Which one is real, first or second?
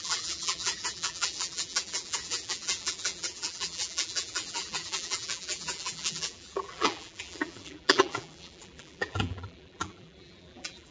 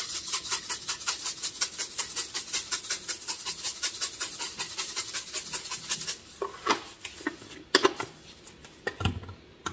second